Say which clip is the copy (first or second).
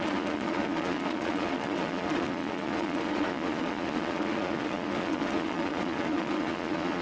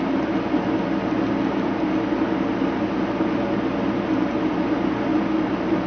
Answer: first